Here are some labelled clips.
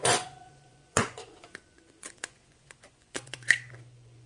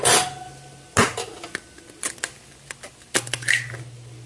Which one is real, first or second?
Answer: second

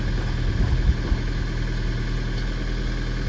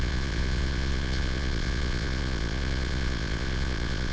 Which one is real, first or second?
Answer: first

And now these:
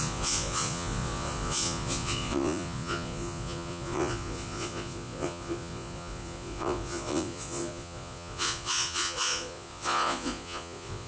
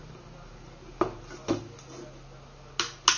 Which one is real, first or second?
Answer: second